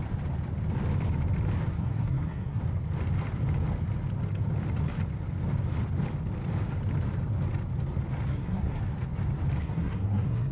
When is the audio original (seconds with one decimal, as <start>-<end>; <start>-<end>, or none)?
0.0-1.7; 2.6-8.3; 8.8-9.6